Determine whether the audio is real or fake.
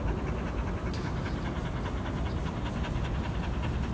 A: real